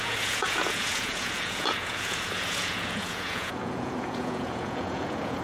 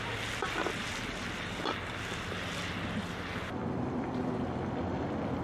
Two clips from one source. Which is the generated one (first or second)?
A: first